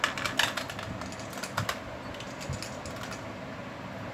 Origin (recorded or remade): recorded